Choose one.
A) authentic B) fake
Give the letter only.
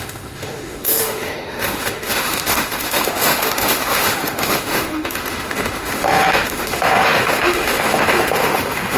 B